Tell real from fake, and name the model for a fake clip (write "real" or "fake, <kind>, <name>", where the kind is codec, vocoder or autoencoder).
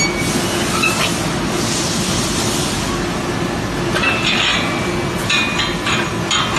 real